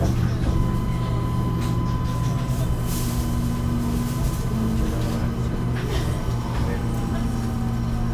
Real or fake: real